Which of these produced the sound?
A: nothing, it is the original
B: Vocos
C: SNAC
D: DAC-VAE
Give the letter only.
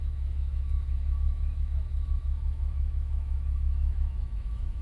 D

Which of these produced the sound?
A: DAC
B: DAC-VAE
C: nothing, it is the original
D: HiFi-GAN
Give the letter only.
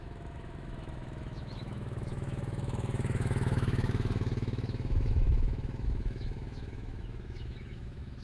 B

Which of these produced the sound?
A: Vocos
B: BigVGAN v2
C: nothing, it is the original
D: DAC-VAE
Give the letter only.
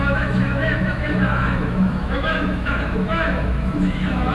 D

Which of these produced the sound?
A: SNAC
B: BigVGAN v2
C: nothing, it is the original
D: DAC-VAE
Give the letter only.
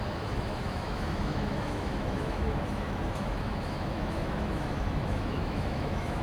D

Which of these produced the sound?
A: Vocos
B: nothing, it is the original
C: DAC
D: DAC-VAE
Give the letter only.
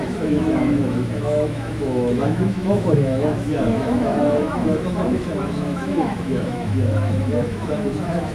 D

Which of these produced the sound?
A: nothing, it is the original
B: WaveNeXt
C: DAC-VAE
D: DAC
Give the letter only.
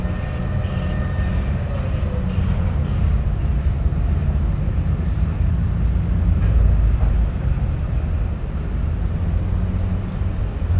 A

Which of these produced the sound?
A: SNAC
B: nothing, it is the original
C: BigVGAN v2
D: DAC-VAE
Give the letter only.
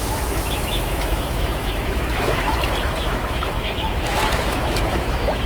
D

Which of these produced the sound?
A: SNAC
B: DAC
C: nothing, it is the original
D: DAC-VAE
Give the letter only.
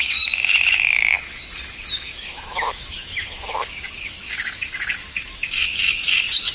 D